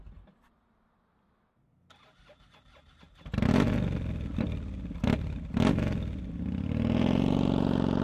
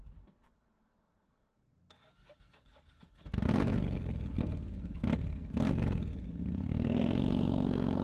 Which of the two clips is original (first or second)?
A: first